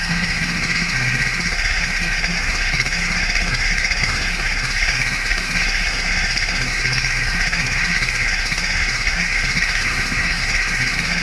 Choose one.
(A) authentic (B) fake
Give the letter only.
B